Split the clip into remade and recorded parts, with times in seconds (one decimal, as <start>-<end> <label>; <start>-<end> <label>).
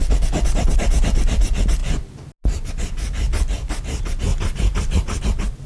0.0-4.3 recorded; 4.3-5.2 remade; 5.2-5.7 recorded